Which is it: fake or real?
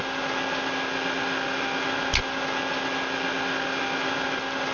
real